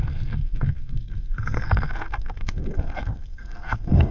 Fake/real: fake